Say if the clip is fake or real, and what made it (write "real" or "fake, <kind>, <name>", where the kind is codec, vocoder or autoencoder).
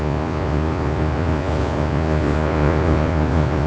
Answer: fake, vocoder, Vocos